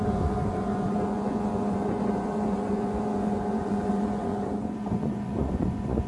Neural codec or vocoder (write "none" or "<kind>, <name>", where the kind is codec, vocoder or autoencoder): vocoder, Vocos